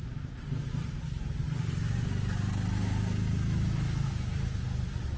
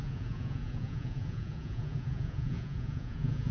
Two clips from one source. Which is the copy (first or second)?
second